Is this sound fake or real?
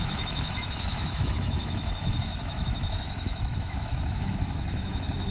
fake